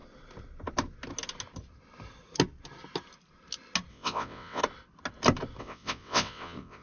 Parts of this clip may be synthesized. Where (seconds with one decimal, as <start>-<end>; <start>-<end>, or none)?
3.9-4.6; 5.6-6.8